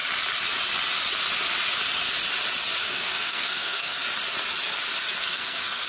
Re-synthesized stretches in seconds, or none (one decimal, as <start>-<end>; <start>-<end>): 2.8-4.0; 5.2-5.9